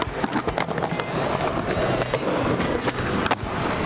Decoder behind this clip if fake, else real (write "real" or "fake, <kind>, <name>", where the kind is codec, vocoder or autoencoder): real